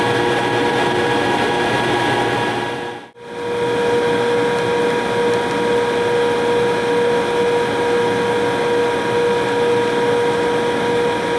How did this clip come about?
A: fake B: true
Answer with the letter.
B